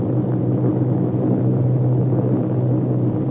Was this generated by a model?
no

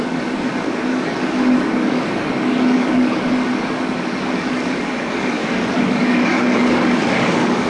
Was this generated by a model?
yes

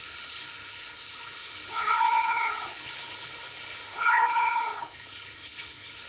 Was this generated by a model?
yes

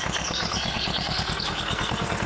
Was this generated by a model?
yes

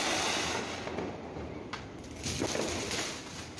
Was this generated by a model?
no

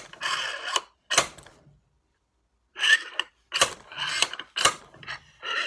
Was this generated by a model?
no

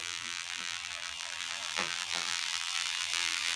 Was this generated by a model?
yes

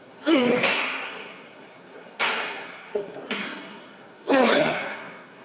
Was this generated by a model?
yes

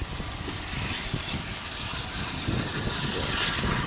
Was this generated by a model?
no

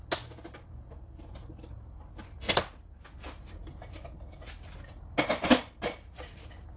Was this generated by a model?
no